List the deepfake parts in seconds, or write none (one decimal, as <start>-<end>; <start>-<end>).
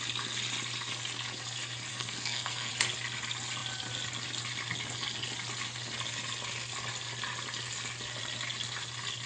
1.9-2.7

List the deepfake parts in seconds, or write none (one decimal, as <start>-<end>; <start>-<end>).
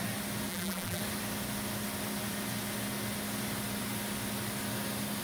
0.5-1.0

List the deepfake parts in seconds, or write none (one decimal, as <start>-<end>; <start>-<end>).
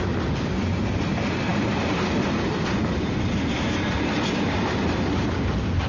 none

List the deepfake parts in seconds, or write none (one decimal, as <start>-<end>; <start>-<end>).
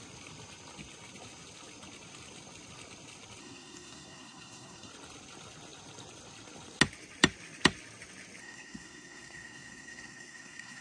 3.4-4.9; 8.4-10.8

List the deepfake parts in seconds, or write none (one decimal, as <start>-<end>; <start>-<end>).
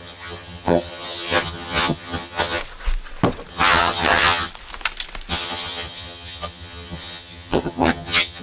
0.0-2.6; 3.5-4.5; 5.3-8.4